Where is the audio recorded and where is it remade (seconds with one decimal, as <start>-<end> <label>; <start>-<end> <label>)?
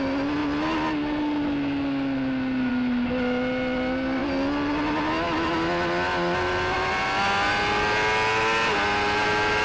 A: 0.0-9.6 recorded